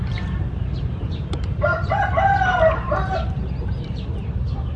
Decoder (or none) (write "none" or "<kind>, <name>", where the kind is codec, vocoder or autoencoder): vocoder, BigVGAN v2